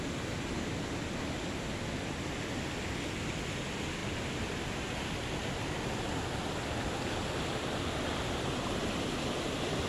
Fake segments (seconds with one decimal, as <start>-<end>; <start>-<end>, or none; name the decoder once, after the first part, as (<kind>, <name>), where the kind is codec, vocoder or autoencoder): 4.0-5.1 (vocoder, BigVGAN v2)